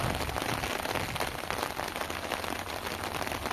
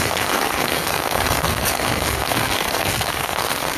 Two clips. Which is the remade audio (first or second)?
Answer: second